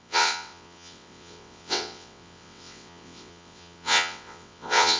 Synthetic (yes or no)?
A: yes